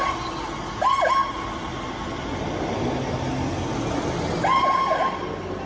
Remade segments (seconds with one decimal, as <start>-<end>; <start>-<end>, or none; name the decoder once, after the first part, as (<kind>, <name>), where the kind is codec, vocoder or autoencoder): none